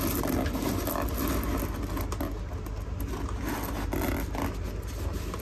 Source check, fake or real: real